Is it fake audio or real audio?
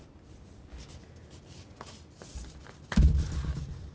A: real